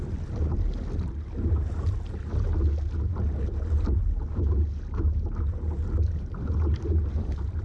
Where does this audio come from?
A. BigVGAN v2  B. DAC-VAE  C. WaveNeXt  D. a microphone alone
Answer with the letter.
D